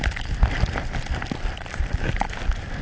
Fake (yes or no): no